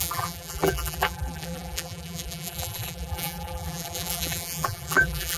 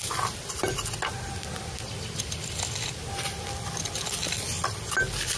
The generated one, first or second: first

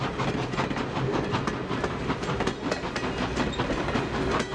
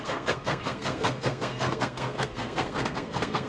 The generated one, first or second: second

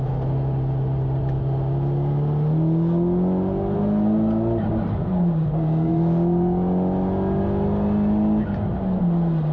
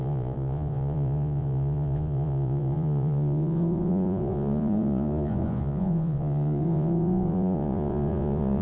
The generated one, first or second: second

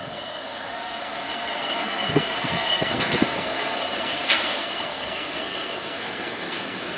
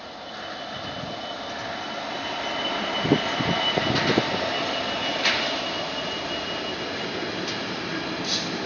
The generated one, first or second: first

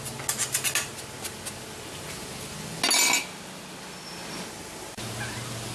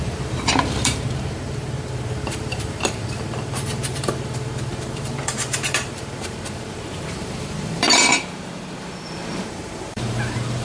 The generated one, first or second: second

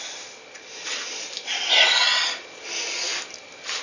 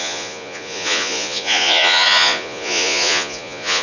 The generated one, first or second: second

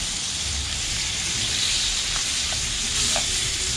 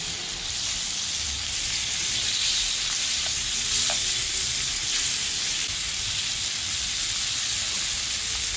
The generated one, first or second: first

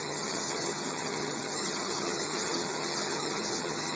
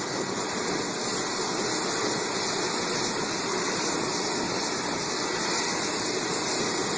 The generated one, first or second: first